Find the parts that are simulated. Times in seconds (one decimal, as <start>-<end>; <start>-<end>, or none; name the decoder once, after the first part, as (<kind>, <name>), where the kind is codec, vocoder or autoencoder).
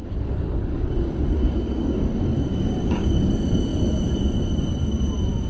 0.0-3.3 (codec, DAC)